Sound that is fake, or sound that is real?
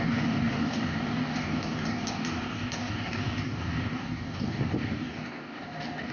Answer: fake